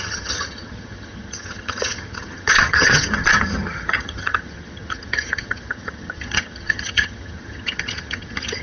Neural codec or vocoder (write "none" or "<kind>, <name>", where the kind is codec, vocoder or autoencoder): vocoder, HiFi-GAN